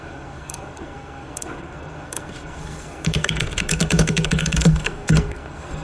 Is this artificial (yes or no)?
yes